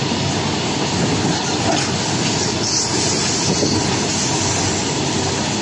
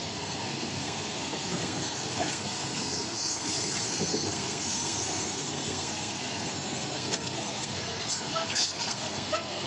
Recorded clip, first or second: first